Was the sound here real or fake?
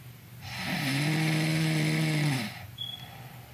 real